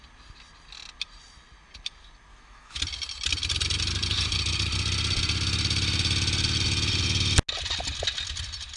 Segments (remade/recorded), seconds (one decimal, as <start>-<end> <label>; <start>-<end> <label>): 0.0-2.3 recorded; 2.3-2.8 remade; 2.8-8.8 recorded

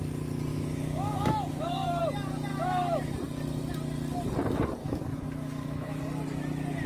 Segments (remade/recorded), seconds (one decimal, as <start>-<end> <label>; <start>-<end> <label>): 0.0-0.5 recorded; 0.5-2.0 remade; 2.0-2.5 recorded; 2.5-3.1 remade; 3.1-4.8 recorded; 4.8-6.0 remade; 6.0-6.9 recorded

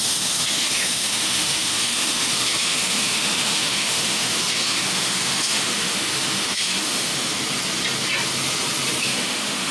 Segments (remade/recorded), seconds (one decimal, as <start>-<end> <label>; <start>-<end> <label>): 0.0-7.3 remade; 7.3-9.0 recorded; 9.0-9.7 remade